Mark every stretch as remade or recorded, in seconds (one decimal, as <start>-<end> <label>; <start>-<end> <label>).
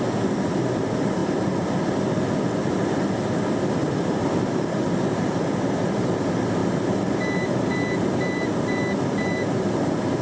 0.0-1.2 recorded; 1.2-1.8 remade; 1.8-3.8 recorded; 3.8-5.0 remade; 5.0-10.2 recorded